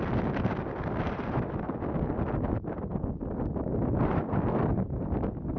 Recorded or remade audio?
recorded